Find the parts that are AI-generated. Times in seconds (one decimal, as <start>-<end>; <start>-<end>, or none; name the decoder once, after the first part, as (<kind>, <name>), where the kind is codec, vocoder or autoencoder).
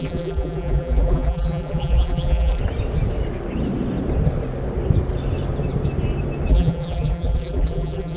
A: 0.0-2.6 (vocoder, BigVGAN v2); 6.5-8.2